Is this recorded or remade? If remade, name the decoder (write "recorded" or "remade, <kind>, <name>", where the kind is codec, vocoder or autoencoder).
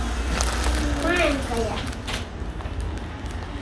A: recorded